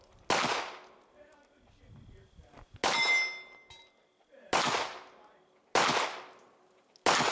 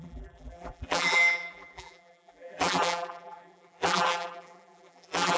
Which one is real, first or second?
first